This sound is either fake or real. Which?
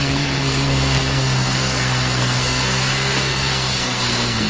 fake